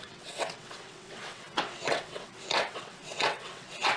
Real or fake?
fake